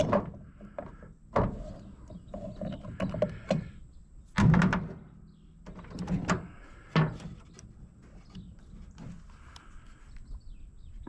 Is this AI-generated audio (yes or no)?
no